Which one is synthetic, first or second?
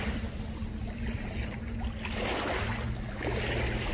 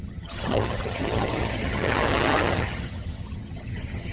second